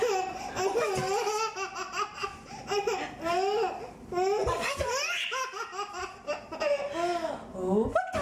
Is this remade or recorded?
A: recorded